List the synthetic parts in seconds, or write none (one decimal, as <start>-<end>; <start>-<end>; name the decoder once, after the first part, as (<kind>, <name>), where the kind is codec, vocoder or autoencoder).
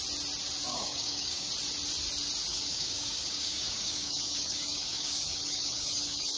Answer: 0.7-1.5 (codec, DAC); 2.5-6.4